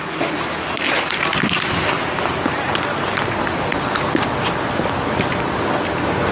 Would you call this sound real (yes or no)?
yes